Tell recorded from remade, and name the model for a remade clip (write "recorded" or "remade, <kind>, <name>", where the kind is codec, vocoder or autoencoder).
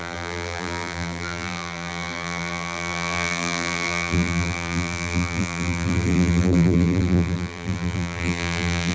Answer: remade, vocoder, BigVGAN v2